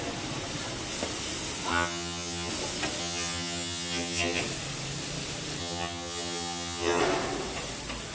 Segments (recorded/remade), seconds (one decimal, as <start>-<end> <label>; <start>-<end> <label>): 0.0-1.7 recorded; 1.7-2.5 remade; 2.5-3.0 recorded; 3.0-4.4 remade; 4.4-5.6 recorded; 5.6-7.0 remade; 7.0-8.1 recorded